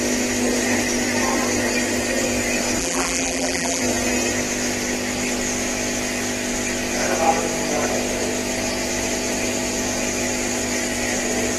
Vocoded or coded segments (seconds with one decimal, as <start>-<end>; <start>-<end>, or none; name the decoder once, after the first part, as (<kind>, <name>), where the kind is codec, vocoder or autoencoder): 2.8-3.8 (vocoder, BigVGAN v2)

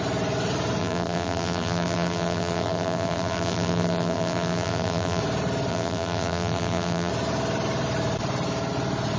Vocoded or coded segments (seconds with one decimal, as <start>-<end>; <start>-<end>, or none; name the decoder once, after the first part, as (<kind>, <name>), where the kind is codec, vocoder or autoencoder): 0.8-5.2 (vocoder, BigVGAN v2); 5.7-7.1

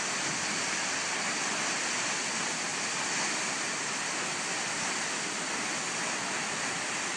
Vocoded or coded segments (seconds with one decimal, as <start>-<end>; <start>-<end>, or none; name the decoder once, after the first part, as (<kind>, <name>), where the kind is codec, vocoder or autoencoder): none

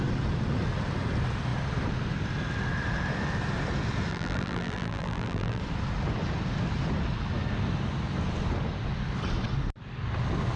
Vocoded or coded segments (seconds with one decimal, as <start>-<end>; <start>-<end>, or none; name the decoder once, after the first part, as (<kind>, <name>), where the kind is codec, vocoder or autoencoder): 4.1-5.6 (vocoder, BigVGAN v2)

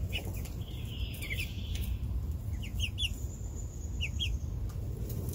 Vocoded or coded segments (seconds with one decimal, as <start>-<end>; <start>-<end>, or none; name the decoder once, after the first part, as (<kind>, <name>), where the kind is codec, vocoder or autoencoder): 0.0-2.4 (vocoder, BigVGAN v2)

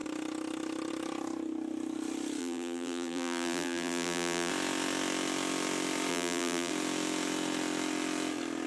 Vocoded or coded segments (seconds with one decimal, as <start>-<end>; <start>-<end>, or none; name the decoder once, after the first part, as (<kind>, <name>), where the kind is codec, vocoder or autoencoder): 2.4-4.5 (vocoder, BigVGAN v2); 6.1-6.7

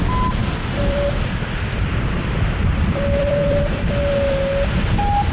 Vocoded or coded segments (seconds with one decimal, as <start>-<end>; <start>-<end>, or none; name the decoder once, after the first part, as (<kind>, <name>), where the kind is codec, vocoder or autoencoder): 0.4-3.6 (vocoder, BigVGAN v2)

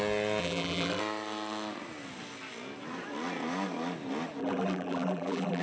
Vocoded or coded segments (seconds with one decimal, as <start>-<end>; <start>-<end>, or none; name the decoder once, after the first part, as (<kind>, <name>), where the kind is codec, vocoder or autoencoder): 0.4-1.0 (vocoder, BigVGAN v2); 4.4-5.6